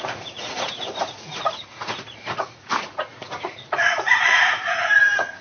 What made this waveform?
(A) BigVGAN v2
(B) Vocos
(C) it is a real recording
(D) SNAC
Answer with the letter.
B